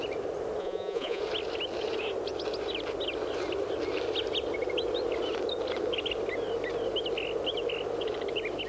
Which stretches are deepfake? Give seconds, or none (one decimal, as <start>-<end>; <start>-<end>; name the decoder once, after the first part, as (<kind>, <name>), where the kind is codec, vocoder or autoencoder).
0.6-1.2 (vocoder, Vocos)